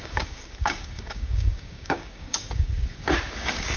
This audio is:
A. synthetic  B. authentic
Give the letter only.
A